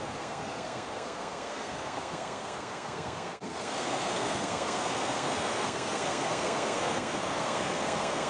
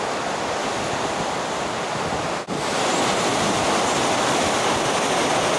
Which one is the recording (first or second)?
second